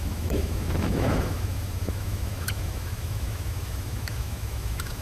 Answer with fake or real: fake